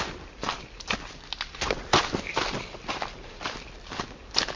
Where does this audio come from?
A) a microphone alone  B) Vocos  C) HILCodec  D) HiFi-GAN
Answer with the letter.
A